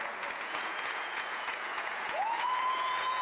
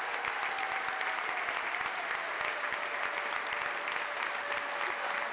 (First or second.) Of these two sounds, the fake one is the first